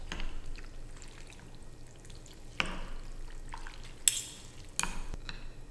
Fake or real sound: real